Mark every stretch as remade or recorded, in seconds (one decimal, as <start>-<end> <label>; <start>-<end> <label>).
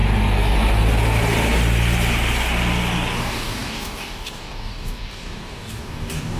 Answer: 0.0-3.2 recorded; 3.2-6.4 remade